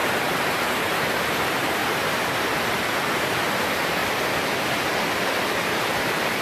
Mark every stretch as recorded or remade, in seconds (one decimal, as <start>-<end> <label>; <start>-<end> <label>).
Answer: 0.0-4.0 remade; 4.0-4.8 recorded; 4.8-6.4 remade